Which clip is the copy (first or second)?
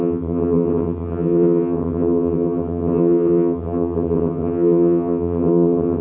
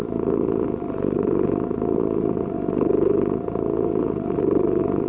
first